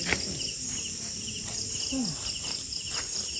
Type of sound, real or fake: real